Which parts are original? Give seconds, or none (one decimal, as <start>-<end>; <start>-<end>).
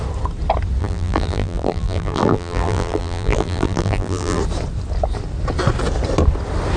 0.0-0.8; 4.4-6.8